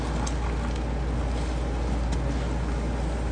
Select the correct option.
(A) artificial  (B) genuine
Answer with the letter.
B